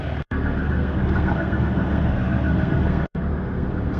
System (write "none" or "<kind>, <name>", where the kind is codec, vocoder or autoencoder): codec, SNAC